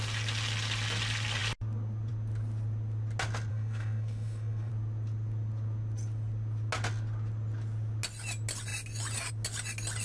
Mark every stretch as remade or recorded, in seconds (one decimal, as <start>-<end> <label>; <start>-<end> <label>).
0.0-3.5 recorded; 3.5-4.7 remade; 4.7-10.0 recorded